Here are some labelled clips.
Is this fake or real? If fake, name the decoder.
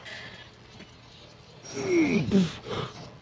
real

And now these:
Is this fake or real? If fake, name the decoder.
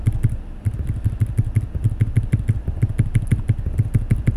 real